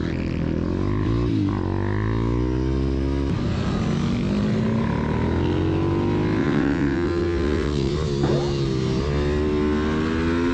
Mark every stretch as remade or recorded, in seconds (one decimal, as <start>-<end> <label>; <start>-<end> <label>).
0.0-6.4 recorded; 6.4-7.9 remade; 7.9-10.5 recorded